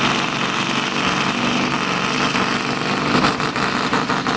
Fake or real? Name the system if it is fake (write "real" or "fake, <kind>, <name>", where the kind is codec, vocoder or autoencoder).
real